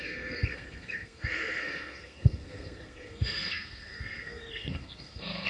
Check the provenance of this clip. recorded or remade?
remade